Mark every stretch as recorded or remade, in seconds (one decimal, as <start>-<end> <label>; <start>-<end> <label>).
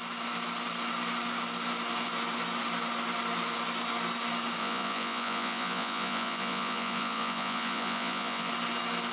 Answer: 0.0-4.6 recorded; 4.6-8.5 remade; 8.5-9.1 recorded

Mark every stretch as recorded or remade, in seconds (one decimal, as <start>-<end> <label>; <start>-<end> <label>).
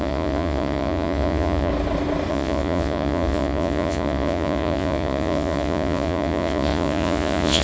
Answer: 0.0-1.7 remade; 1.7-2.3 recorded; 2.3-7.6 remade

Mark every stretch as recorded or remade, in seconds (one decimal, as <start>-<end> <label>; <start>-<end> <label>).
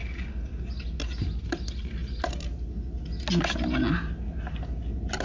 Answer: 0.0-5.2 recorded